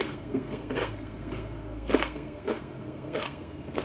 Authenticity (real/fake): fake